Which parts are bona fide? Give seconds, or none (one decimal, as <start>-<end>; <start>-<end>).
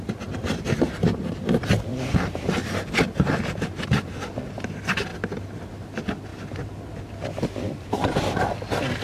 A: 0.0-1.9; 4.0-9.0